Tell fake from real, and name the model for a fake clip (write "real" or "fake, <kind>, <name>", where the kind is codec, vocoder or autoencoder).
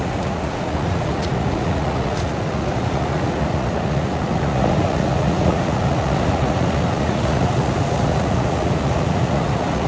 fake, vocoder, Vocos